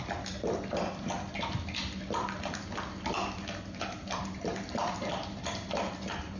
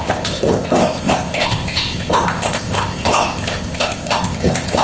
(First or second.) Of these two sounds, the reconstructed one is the second